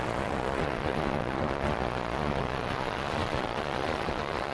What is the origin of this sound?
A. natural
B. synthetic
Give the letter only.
B